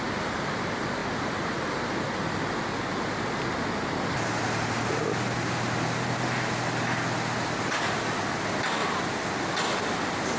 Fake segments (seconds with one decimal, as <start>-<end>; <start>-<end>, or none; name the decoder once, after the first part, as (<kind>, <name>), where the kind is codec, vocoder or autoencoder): none